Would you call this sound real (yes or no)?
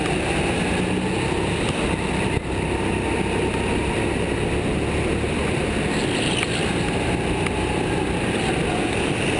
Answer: yes